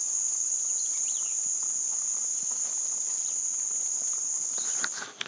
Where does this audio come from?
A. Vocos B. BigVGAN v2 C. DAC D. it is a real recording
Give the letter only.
D